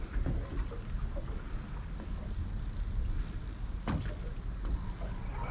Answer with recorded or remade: recorded